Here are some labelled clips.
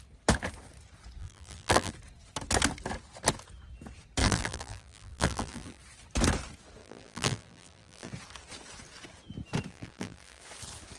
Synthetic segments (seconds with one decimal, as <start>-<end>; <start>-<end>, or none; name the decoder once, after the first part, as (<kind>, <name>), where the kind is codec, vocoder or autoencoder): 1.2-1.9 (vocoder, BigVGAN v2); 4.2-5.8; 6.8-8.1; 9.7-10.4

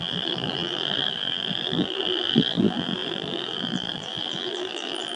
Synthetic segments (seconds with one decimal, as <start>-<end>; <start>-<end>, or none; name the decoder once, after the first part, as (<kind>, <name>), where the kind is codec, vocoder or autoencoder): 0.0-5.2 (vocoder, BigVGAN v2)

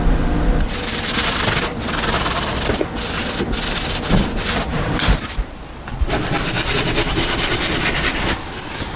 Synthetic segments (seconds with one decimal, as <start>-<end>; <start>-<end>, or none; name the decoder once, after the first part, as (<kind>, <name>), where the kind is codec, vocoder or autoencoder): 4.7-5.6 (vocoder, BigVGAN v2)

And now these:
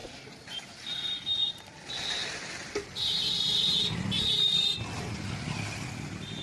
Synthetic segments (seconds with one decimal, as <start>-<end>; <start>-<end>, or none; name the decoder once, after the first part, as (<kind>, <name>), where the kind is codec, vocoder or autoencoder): 0.0-0.6 (vocoder, BigVGAN v2); 1.4-2.0

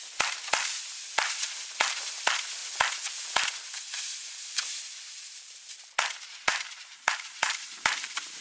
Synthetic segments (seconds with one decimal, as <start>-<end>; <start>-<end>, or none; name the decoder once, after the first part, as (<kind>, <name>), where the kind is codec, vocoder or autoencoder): 6.5-8.4 (vocoder, BigVGAN v2)

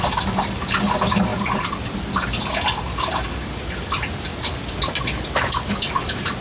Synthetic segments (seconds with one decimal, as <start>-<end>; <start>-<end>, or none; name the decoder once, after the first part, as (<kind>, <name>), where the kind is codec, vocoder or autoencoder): 0.0-1.3 (vocoder, BigVGAN v2); 2.5-4.3; 5.0-6.4